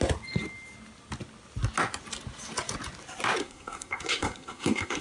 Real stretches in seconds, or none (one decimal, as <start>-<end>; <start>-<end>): 0.0-3.4